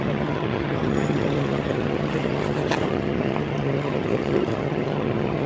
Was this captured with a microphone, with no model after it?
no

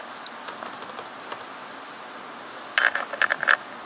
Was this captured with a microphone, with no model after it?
yes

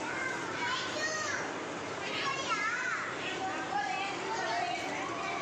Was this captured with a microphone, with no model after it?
yes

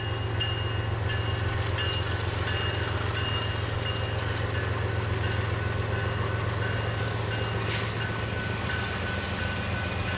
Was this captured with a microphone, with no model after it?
yes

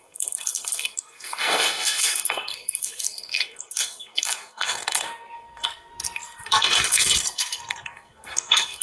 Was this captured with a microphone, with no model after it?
no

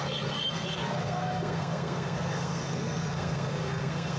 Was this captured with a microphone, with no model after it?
no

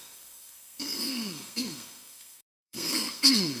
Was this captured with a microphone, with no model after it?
no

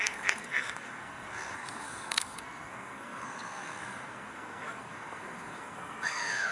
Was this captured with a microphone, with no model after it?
no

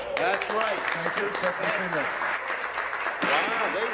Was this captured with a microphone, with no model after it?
yes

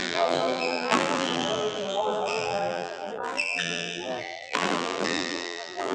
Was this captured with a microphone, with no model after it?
no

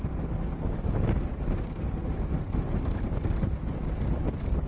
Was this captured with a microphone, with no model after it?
yes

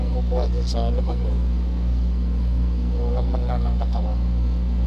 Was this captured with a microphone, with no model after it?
no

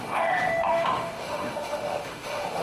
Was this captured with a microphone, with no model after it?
no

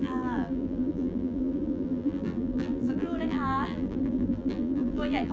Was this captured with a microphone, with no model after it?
no